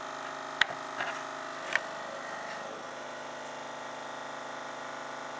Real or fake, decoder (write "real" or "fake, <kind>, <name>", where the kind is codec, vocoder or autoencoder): real